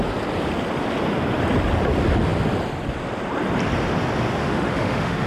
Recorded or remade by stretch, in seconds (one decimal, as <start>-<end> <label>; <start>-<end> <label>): 0.0-4.4 recorded; 4.4-5.3 remade